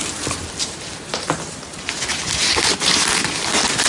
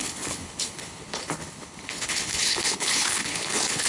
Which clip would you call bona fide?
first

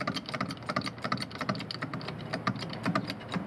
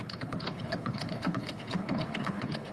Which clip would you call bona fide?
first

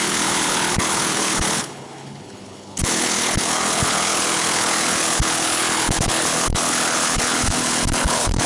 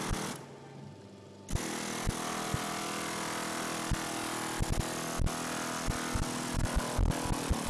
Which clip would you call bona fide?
second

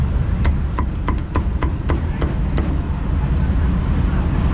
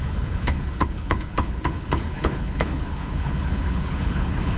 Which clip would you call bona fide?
first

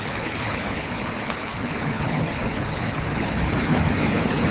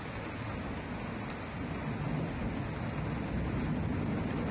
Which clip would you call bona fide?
second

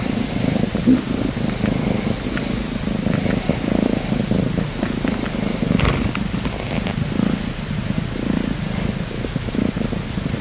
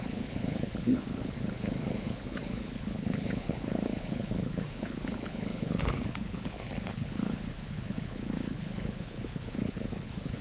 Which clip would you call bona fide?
first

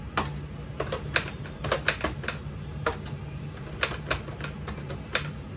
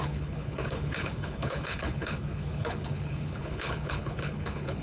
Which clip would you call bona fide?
first